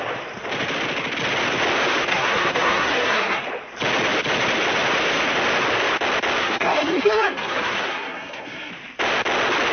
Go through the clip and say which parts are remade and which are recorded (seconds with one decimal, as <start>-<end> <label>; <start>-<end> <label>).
0.0-2.1 recorded; 2.1-3.4 remade; 3.4-6.4 recorded; 6.4-8.7 remade; 8.7-9.7 recorded